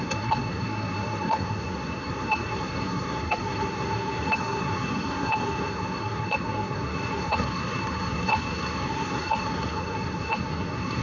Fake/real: fake